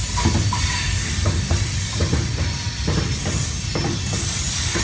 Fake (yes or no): no